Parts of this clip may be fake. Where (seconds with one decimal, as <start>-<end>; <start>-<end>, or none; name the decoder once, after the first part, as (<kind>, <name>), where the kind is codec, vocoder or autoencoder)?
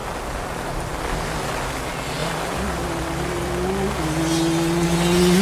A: 2.2-3.4 (vocoder, BigVGAN v2)